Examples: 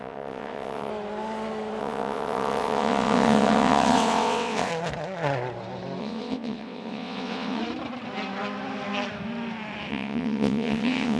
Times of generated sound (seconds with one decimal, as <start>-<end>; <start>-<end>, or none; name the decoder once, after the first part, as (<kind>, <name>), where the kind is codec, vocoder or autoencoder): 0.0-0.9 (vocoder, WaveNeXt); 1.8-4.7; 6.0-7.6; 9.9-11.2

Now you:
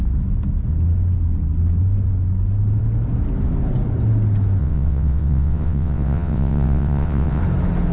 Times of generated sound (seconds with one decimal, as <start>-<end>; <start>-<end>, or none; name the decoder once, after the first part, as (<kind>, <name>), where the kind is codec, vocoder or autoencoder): 4.6-7.4 (vocoder, WaveNeXt)

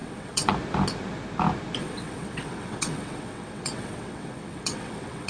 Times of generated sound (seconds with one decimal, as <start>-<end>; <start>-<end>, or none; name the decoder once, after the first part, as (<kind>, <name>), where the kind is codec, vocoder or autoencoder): 0.0-0.5 (vocoder, WaveNeXt); 1.8-5.3

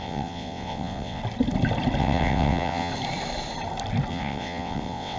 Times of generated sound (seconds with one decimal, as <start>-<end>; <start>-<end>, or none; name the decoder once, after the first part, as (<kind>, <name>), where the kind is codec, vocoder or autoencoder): 0.0-1.2 (vocoder, WaveNeXt); 2.0-2.9; 4.1-5.2

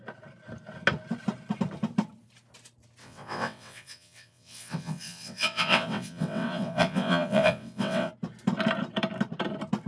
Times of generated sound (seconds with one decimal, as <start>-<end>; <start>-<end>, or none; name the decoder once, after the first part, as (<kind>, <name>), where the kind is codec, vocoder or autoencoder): 3.0-8.1 (vocoder, WaveNeXt)

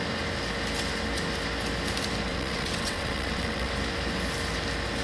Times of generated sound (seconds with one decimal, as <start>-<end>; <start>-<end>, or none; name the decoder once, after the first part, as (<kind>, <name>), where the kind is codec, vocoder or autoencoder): 2.3-3.7 (vocoder, WaveNeXt)

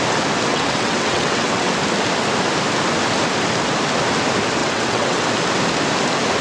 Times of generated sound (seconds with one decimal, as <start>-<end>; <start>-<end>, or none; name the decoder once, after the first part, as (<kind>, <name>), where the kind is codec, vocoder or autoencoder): 0.5-1.7 (vocoder, WaveNeXt); 4.6-5.2